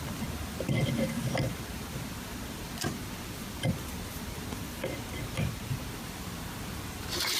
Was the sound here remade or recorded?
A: remade